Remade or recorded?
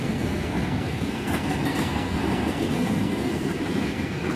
remade